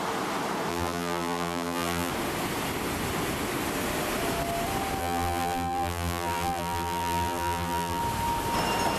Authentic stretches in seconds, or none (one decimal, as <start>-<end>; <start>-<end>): 0.0-0.7; 2.1-5.0; 8.0-9.0